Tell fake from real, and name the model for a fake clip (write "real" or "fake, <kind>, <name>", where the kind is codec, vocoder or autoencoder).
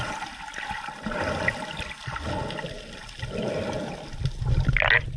real